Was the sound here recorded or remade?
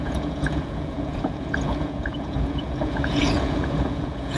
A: remade